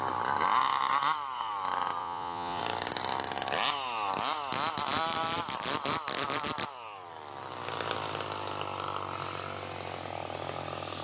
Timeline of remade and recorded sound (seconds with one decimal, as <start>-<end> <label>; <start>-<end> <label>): 0.0-2.0 recorded; 2.0-2.6 remade; 2.6-11.0 recorded